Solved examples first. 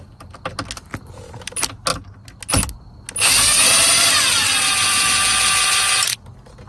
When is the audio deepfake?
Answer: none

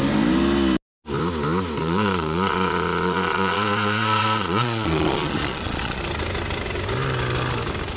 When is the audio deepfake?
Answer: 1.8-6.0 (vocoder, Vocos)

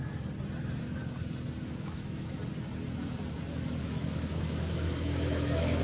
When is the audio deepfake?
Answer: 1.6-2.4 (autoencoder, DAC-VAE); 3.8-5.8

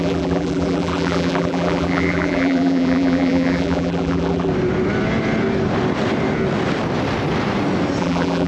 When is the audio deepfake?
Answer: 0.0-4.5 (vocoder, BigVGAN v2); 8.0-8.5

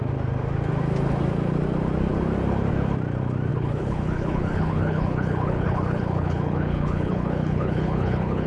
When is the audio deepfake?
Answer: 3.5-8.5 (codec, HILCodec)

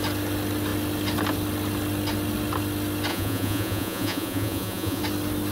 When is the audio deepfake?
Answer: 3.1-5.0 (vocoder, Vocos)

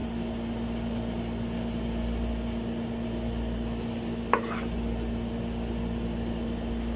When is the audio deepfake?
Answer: none